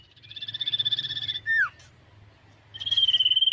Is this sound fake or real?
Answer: real